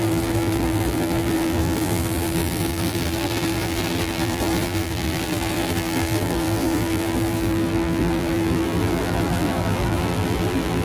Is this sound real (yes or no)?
no